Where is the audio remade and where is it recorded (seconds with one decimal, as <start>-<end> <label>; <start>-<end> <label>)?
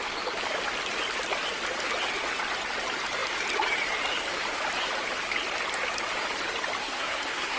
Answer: 0.0-6.8 recorded; 6.8-7.6 remade